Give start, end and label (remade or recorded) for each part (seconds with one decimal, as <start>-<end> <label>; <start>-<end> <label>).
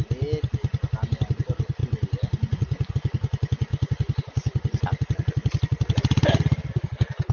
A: 0.0-7.3 recorded